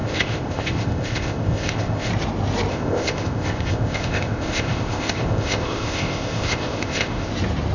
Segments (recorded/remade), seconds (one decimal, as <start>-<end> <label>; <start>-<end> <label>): 0.0-2.1 remade; 2.1-2.7 recorded; 2.7-7.3 remade; 7.3-7.7 recorded